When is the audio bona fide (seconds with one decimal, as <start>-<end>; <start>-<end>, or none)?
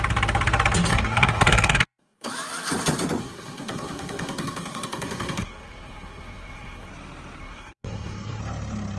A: 0.0-0.9; 2.3-3.2; 6.9-7.4; 8.4-9.0